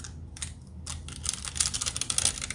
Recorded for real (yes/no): yes